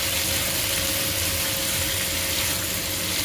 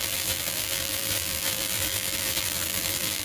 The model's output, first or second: second